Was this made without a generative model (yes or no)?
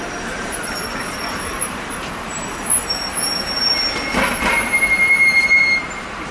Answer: no